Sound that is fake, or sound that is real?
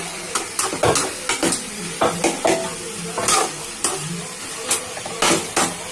real